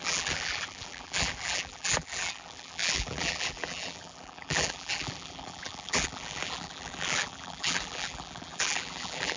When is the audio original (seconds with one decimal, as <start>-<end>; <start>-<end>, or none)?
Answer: none